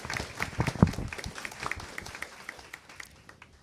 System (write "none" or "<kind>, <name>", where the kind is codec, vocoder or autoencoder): none